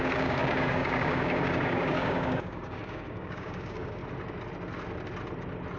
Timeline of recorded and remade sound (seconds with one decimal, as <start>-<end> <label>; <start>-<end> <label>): 0.0-4.0 remade; 4.0-5.8 recorded